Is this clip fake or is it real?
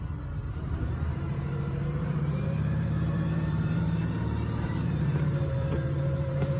fake